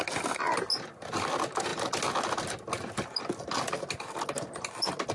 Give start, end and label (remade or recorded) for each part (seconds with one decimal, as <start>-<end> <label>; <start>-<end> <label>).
0.0-5.1 recorded